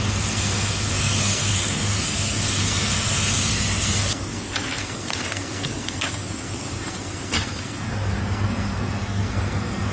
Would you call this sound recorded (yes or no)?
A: no